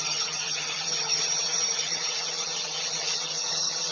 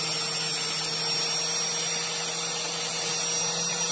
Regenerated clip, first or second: first